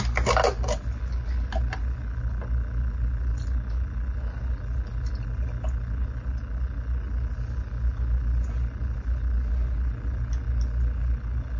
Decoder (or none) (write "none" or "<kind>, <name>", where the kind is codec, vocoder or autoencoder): none